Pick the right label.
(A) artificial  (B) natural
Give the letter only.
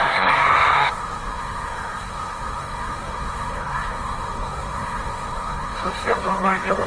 A